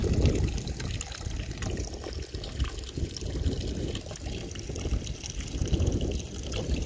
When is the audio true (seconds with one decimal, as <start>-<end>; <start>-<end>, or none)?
0.0-6.9

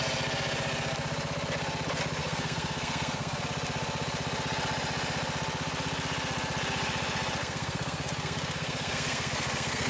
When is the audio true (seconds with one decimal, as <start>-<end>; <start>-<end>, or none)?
0.0-2.2; 3.4-7.4

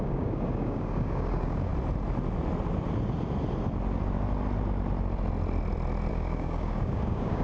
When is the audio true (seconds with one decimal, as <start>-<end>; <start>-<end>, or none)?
1.7-6.1

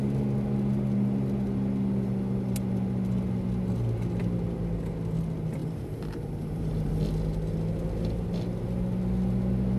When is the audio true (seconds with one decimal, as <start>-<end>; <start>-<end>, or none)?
0.0-5.6; 6.9-9.8

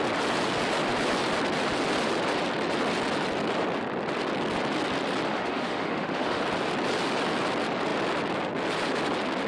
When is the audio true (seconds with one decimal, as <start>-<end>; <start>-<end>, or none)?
0.0-5.3; 6.4-9.5

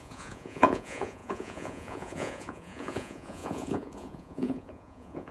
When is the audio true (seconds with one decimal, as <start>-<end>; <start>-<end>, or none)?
none

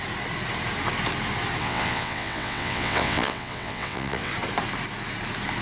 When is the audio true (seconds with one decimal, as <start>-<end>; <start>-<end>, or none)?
0.0-1.6; 4.3-5.6